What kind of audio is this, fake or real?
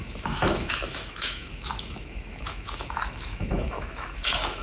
fake